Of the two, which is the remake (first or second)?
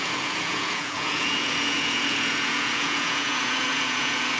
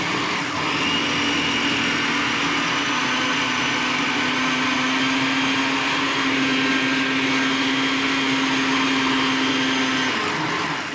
first